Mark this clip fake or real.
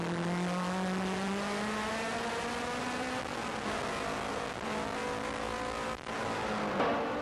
real